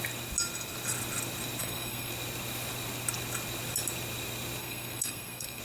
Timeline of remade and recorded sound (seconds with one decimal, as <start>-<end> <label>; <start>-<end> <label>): 0.0-1.6 recorded; 1.6-2.1 remade; 2.1-4.6 recorded; 4.6-5.6 remade